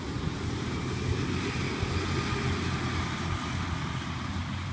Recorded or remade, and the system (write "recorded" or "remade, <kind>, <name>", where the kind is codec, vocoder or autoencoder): recorded